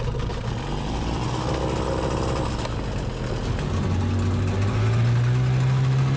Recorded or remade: recorded